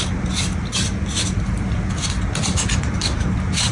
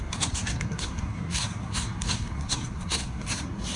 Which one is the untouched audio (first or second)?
first